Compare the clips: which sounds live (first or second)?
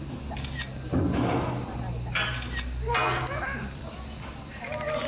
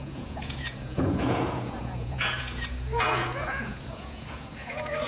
first